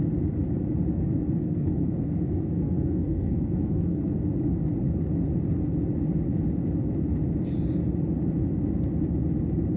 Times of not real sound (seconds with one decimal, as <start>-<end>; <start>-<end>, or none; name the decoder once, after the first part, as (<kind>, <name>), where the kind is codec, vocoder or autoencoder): 1.4-4.2 (codec, SNAC)